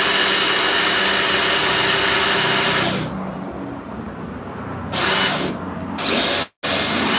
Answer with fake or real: real